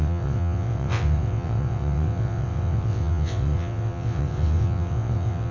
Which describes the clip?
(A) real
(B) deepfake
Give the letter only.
B